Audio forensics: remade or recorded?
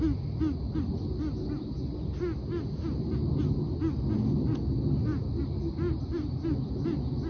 recorded